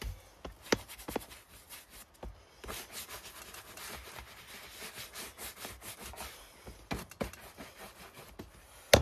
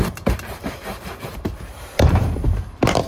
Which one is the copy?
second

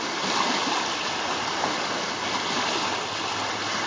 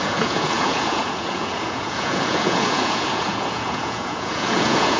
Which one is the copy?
second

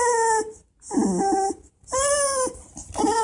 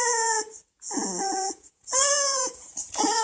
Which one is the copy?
second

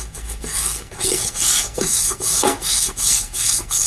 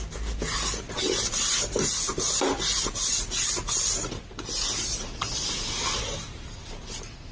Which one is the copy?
first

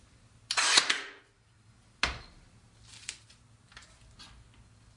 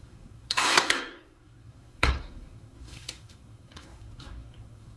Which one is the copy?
second